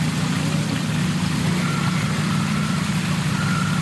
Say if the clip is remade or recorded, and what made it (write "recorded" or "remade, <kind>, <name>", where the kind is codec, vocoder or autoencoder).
recorded